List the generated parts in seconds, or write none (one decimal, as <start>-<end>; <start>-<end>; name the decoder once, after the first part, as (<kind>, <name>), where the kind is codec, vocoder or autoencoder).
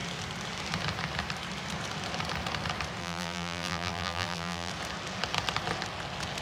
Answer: 3.0-4.7 (vocoder, BigVGAN v2)